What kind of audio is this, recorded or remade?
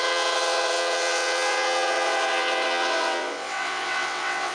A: remade